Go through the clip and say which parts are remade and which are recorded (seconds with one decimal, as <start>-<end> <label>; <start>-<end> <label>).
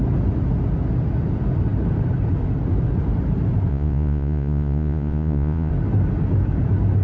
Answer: 0.0-3.7 recorded; 3.7-5.7 remade; 5.7-7.0 recorded